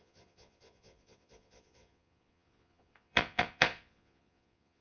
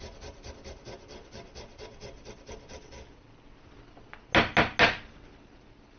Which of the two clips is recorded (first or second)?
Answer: second